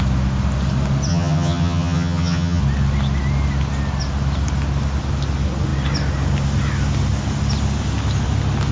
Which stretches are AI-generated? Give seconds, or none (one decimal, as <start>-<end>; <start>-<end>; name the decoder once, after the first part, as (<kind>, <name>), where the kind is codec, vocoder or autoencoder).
1.1-2.6 (vocoder, HiFi-GAN)